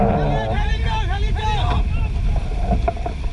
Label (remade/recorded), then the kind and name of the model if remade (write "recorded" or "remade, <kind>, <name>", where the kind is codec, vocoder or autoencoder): recorded